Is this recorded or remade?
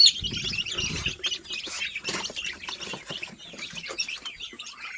recorded